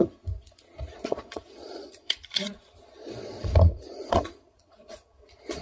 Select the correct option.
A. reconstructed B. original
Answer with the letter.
A